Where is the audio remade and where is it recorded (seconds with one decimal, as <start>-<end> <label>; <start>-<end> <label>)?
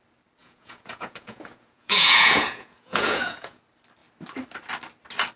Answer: 0.0-0.4 recorded; 0.4-3.6 remade; 3.6-5.4 recorded